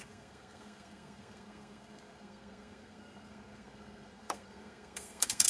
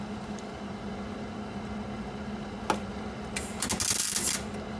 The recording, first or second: second